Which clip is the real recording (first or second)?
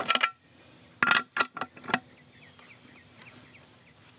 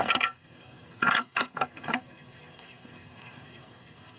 first